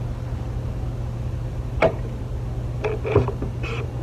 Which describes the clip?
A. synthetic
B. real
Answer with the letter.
B